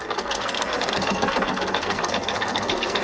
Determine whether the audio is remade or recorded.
remade